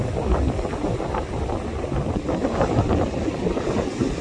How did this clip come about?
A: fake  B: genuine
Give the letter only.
B